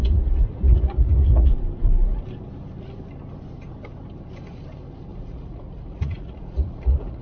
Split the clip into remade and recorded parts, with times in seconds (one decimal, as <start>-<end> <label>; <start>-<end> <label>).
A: 0.0-1.5 remade; 1.5-5.1 recorded; 5.1-7.2 remade